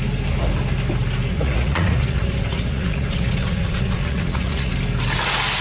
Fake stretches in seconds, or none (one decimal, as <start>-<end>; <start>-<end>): 1.3-4.7